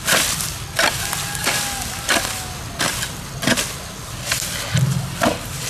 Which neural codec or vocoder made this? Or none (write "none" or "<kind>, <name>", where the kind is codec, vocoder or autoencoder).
none